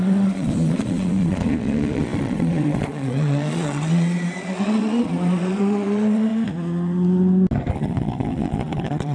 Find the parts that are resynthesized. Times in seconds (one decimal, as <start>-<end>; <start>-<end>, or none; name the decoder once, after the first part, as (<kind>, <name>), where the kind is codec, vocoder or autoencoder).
0.0-6.3 (vocoder, Vocos); 7.7-9.1